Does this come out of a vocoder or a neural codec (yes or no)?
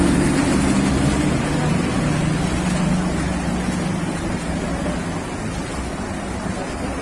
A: no